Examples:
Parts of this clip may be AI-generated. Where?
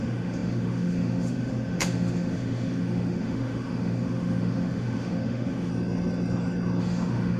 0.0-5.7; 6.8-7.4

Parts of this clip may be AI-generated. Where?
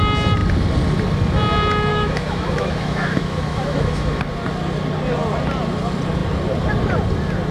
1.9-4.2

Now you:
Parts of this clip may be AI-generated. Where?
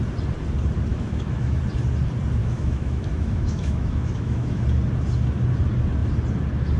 0.9-1.6; 2.4-4.6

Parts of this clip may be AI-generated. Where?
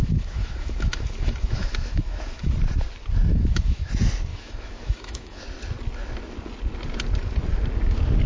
0.0-2.5; 3.3-3.9; 4.3-5.4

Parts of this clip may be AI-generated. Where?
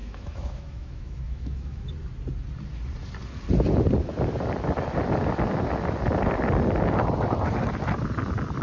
0.0-1.9